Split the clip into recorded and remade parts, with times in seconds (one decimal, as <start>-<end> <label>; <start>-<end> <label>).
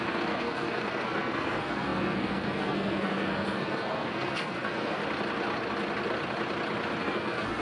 0.0-5.0 remade; 5.0-7.0 recorded; 7.0-7.6 remade